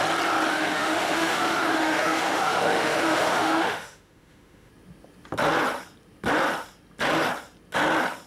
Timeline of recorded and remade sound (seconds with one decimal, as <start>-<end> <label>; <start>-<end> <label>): 0.0-0.5 recorded; 0.5-4.7 remade; 4.7-8.3 recorded